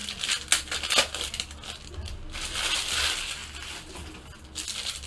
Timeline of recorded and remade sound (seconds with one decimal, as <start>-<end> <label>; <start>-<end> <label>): 0.0-5.1 recorded